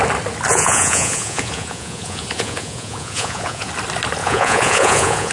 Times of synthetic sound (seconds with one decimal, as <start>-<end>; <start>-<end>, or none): 0.5-3.7; 4.2-5.3